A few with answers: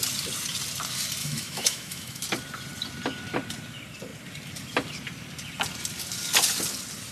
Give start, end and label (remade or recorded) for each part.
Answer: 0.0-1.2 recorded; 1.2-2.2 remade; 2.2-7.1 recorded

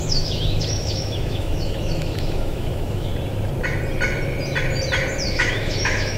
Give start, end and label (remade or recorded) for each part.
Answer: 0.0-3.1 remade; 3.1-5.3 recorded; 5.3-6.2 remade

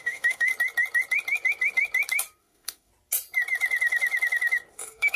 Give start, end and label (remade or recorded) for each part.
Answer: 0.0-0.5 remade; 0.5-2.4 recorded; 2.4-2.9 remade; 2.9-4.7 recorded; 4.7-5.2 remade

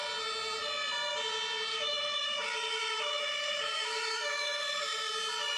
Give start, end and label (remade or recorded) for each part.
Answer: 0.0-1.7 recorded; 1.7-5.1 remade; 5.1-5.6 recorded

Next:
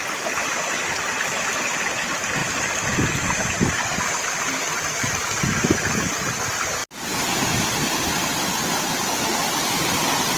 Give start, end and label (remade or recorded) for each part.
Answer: 0.0-10.4 recorded